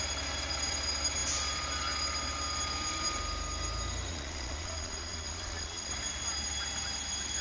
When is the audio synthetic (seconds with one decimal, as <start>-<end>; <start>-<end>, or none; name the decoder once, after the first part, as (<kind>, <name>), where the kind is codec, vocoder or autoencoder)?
4.1-5.9 (vocoder, Vocos)